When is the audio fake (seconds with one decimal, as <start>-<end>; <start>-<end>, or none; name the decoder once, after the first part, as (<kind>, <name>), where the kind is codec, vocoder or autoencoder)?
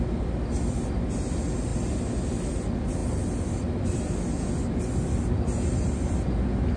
none